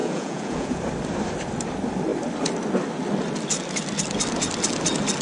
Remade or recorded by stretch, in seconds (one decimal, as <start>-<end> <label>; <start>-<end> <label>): 0.0-0.8 remade; 0.8-5.2 recorded